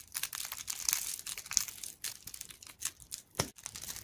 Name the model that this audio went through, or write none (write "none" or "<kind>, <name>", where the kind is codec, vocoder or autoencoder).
none